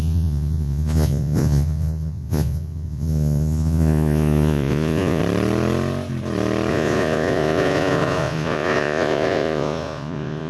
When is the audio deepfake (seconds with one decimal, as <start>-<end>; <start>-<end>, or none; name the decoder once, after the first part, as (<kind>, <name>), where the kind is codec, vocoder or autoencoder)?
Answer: 0.0-5.2 (vocoder, Vocos); 6.7-10.5